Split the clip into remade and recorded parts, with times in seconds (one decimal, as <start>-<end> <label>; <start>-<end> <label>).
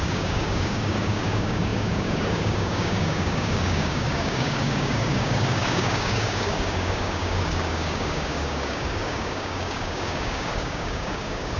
0.0-11.6 remade